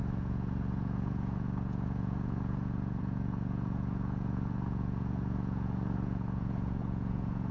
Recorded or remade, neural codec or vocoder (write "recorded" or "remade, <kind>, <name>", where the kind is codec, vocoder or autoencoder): remade, vocoder, Vocos